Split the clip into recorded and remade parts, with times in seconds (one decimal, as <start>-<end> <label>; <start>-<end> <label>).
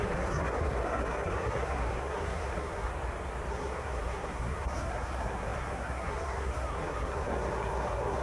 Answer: 0.0-2.9 remade; 2.9-3.5 recorded; 3.5-8.2 remade